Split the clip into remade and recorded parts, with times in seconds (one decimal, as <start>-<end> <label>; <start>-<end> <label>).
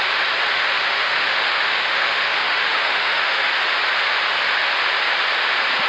0.0-0.5 recorded; 0.5-3.5 remade; 3.5-5.9 recorded